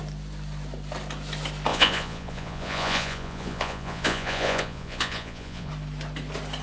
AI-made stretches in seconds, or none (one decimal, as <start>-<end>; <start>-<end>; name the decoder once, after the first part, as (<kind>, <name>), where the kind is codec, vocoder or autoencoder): 1.7-5.7 (vocoder, Vocos)